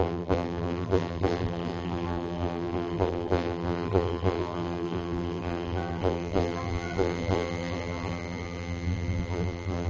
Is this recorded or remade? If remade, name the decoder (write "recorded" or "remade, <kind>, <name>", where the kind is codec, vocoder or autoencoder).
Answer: remade, vocoder, BigVGAN v2